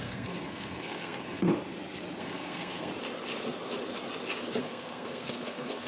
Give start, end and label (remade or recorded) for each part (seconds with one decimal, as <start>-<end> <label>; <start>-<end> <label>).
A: 0.0-1.5 remade; 1.5-2.2 recorded; 2.2-2.9 remade; 2.9-4.6 recorded; 4.6-5.9 remade